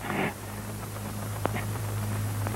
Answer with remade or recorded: remade